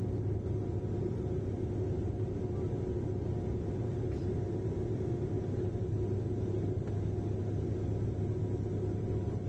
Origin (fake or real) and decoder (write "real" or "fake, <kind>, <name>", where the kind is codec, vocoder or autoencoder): real